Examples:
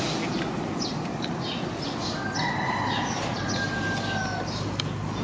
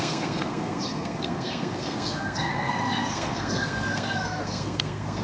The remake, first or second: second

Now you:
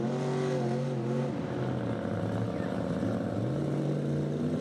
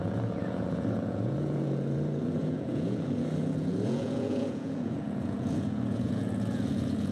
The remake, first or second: second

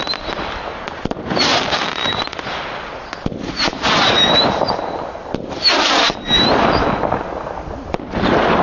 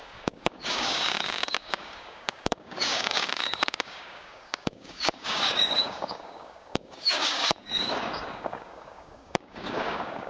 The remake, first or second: second